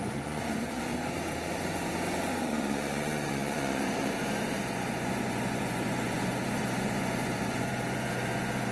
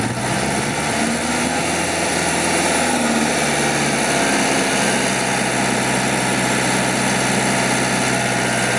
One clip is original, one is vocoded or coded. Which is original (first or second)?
second